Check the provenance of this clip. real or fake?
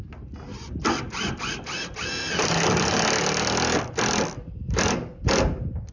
real